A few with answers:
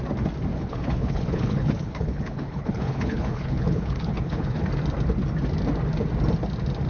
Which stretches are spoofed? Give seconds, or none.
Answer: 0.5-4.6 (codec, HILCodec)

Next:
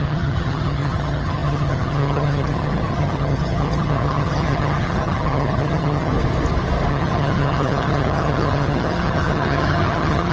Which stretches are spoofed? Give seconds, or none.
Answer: 0.0-6.1 (vocoder, HiFi-GAN); 6.9-10.3